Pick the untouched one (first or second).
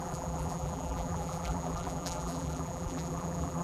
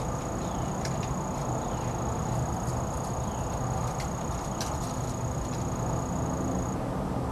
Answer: second